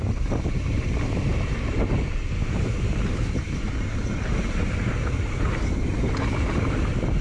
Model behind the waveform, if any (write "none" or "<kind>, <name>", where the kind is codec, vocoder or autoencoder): vocoder, BigVGAN v2